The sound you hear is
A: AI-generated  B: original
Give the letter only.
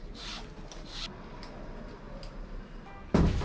B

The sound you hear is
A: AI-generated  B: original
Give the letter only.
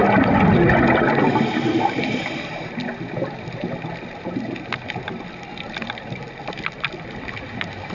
B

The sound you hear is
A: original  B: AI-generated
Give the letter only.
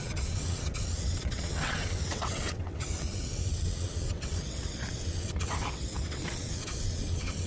B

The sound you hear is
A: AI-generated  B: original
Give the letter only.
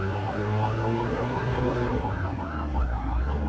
A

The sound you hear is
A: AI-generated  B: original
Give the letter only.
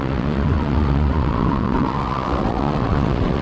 A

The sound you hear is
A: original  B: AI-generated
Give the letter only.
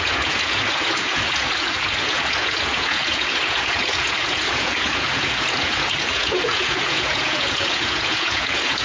B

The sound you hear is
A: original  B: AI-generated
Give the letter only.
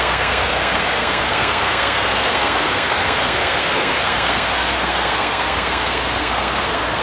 B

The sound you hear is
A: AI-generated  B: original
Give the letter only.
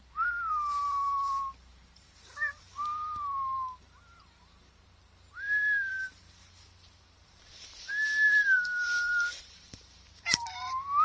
A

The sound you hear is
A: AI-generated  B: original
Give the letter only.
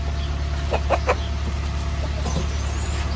B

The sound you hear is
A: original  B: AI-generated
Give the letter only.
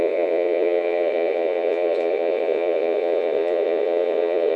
B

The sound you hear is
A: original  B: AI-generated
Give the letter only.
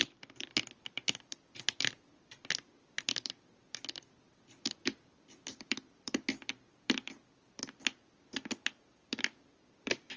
B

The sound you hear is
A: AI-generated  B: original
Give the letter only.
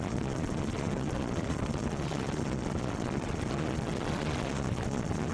A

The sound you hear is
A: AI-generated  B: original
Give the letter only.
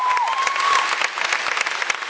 B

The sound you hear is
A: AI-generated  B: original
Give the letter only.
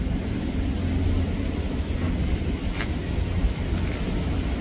B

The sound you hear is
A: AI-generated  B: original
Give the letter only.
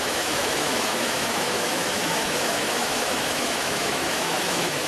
A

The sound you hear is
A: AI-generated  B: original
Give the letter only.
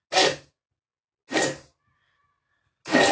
B